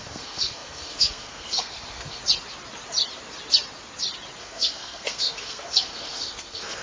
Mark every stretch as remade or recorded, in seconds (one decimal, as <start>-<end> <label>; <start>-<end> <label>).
0.0-2.2 remade; 2.2-4.4 recorded; 4.4-6.8 remade